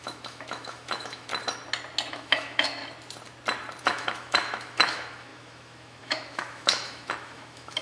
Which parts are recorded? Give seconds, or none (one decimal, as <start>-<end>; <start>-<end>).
1.3-2.1; 2.8-3.8